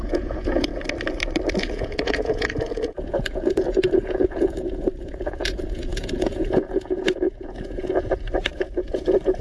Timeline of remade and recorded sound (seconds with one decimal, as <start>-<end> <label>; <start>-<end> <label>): 0.0-0.7 remade; 0.7-1.6 recorded; 1.6-9.4 remade

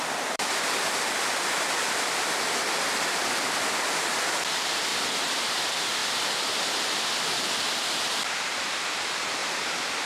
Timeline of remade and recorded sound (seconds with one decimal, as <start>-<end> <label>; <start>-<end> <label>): 0.0-4.9 remade; 4.9-5.6 recorded; 5.6-9.4 remade; 9.4-10.1 recorded

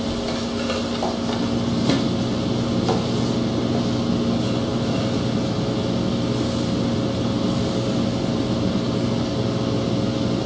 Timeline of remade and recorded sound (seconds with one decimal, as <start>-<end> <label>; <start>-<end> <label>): 0.0-10.5 recorded